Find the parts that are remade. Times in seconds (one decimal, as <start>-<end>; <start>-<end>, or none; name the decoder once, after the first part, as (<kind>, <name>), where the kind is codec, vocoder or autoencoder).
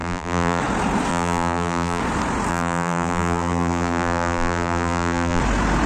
0.0-0.6 (vocoder, BigVGAN v2); 1.1-2.0; 2.5-5.4